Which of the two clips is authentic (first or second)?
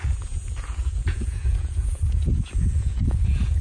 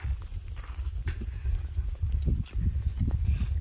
second